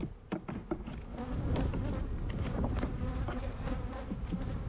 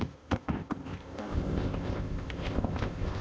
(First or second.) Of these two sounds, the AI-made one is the second